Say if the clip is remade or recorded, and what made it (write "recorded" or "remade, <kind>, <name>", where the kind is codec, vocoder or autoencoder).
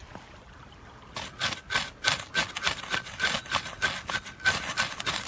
recorded